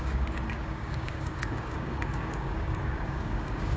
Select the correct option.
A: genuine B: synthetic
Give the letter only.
B